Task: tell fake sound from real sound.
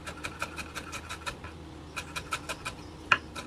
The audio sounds real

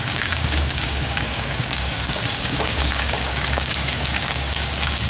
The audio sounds fake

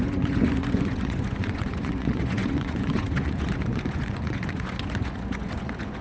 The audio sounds fake